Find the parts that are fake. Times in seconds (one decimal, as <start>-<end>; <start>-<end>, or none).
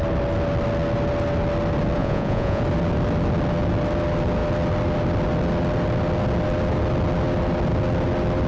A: 2.0-2.6